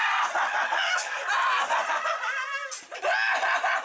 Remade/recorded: recorded